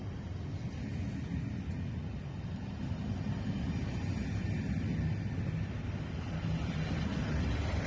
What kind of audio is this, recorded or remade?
recorded